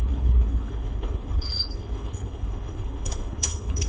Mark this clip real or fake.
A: fake